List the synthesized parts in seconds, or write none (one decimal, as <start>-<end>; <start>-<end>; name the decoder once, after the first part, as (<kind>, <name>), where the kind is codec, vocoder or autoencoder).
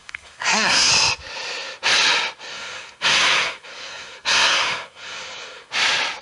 0.0-0.9 (codec, SNAC); 2.5-5.7